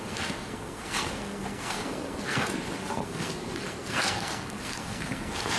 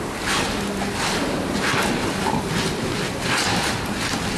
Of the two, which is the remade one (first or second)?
first